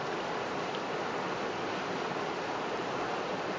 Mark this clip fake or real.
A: real